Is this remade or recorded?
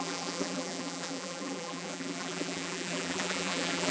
remade